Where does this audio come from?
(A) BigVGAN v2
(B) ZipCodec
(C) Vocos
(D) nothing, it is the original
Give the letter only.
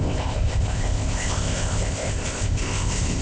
B